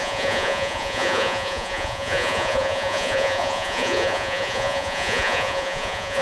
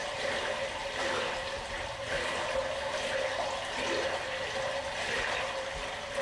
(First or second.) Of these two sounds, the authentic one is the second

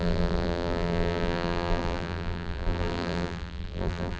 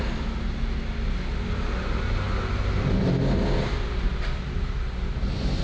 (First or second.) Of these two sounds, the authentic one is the second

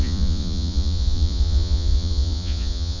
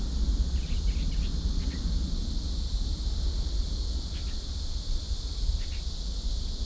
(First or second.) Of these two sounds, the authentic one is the second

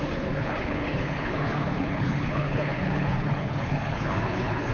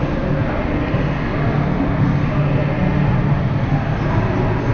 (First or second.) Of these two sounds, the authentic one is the second